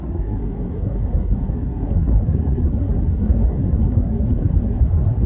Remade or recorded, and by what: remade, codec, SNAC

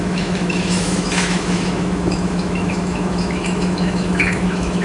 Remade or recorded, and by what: remade, autoencoder, DAC-VAE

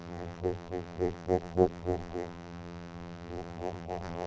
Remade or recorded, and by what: remade, vocoder, BigVGAN v2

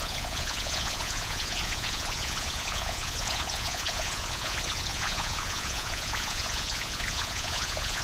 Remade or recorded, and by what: remade, vocoder, Vocos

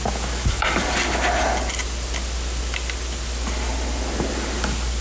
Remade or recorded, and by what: recorded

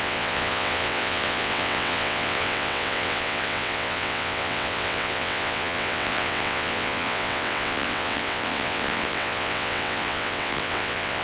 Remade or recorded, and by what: remade, vocoder, WaveNeXt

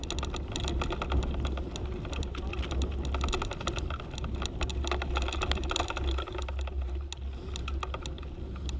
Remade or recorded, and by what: recorded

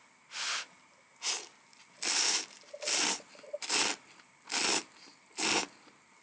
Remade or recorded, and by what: recorded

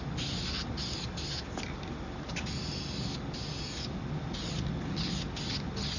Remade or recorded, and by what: recorded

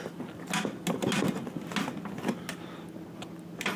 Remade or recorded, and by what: recorded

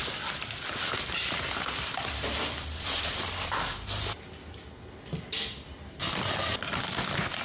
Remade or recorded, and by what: remade, vocoder, BigVGAN v2